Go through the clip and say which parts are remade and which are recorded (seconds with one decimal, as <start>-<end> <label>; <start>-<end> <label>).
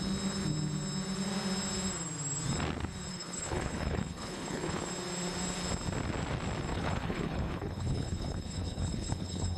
0.0-3.1 recorded; 3.1-4.8 remade; 4.8-6.7 recorded; 6.7-9.6 remade